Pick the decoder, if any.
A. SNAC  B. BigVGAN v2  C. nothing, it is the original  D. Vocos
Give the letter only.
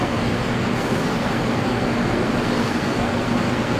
A